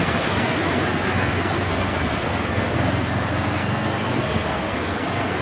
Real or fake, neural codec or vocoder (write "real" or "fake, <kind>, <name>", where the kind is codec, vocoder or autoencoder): fake, codec, SNAC